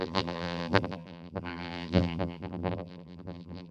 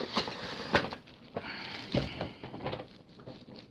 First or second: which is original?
second